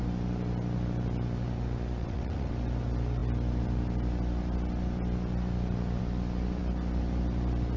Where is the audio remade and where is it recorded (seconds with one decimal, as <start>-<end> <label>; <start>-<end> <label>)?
0.0-2.0 recorded; 2.0-2.5 remade; 2.5-7.8 recorded